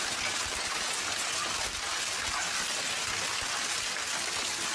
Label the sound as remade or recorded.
recorded